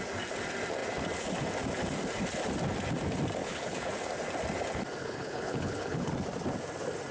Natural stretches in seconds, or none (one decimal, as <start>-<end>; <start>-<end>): 0.0-3.4; 3.9-5.0; 6.1-7.1